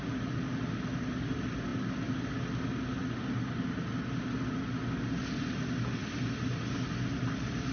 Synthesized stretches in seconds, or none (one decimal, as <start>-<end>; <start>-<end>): none